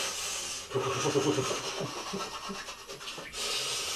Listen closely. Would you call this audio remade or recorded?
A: recorded